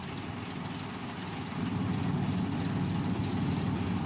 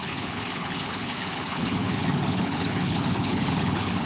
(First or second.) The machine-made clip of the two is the second